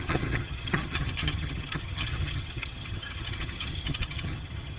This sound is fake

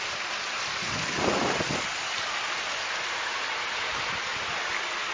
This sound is real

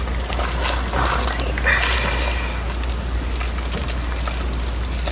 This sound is real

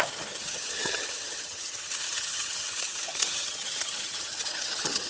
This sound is fake